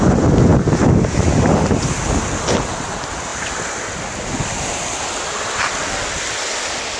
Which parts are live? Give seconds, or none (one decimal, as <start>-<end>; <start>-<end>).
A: 0.0-7.0